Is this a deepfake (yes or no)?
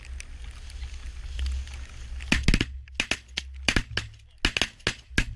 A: no